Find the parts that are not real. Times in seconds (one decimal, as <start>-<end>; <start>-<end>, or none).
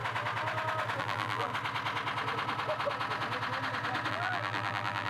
1.0-1.5; 4.1-5.1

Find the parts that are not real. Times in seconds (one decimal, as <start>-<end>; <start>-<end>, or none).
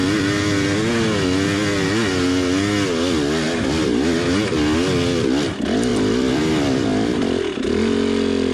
5.9-6.4; 6.9-7.6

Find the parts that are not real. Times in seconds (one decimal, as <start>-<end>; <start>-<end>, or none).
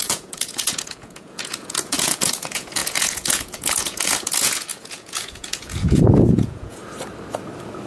0.0-6.8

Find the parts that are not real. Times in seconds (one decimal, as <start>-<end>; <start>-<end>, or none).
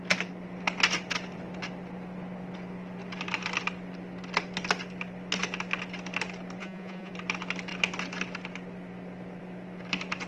6.6-7.1